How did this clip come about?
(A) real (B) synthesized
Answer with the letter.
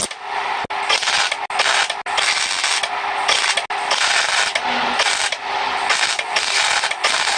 A